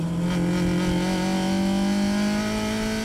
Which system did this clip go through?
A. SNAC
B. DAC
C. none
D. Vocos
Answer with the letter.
C